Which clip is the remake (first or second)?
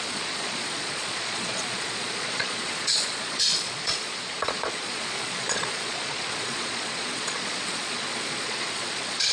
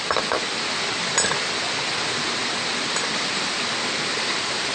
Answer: first